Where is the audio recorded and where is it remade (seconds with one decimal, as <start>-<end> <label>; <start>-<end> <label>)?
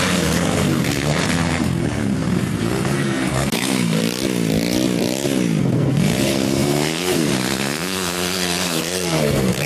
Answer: 0.0-4.0 remade; 4.0-5.6 recorded; 5.6-9.7 remade